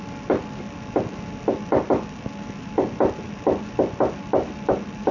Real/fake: real